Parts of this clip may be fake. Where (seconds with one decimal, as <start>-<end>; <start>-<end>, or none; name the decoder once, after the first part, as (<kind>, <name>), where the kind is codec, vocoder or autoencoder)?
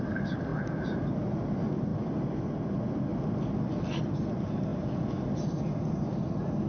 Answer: none